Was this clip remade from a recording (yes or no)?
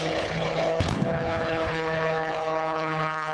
yes